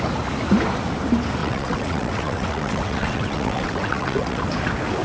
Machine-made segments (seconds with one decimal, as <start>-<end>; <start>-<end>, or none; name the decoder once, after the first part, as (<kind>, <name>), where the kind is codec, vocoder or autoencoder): 1.4-4.4 (vocoder, WaveNeXt)